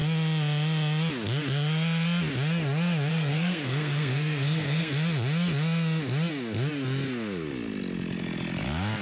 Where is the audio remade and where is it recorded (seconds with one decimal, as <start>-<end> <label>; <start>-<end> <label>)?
0.0-3.1 recorded; 3.1-4.9 remade; 4.9-9.0 recorded